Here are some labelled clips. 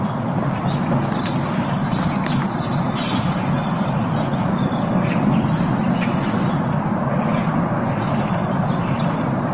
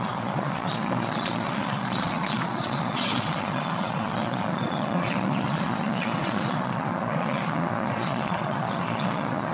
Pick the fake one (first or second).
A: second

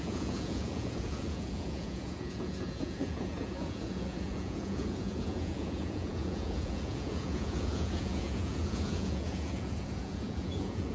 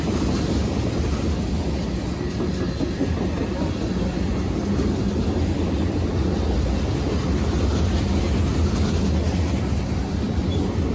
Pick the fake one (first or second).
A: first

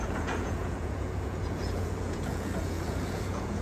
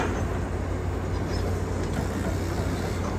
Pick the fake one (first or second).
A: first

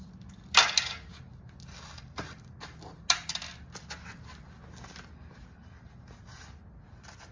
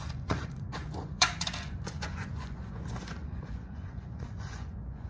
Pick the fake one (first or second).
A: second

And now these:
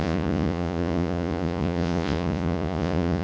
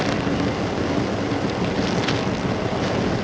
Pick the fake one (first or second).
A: first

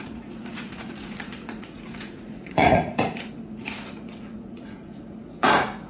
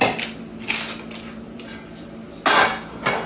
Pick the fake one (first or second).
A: first